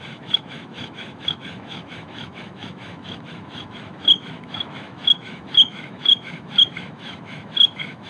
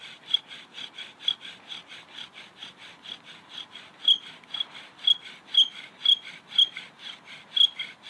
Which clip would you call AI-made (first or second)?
first